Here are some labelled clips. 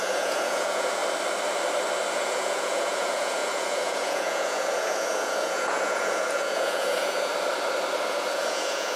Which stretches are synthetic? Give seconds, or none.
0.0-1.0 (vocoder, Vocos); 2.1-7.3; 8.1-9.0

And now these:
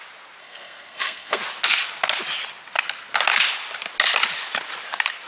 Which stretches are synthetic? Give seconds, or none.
0.4-1.4 (codec, SNAC)

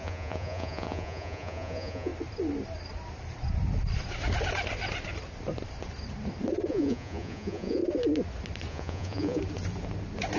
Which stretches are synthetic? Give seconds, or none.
0.0-2.1 (vocoder, Vocos); 6.7-7.8; 8.7-9.4

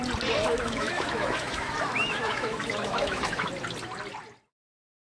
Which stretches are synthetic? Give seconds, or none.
0.4-3.5 (autoencoder, DAC-VAE)